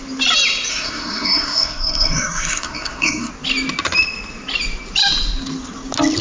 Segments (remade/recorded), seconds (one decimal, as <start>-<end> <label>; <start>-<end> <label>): 0.0-0.7 recorded; 0.7-3.3 remade; 3.3-6.2 recorded